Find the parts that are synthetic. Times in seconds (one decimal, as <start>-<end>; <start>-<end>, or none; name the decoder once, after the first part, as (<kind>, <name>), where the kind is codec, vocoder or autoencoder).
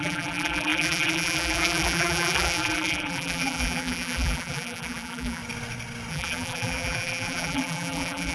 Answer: 0.0-5.4 (vocoder, BigVGAN v2); 6.1-8.3